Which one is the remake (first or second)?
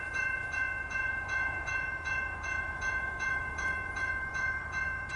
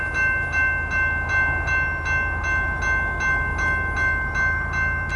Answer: first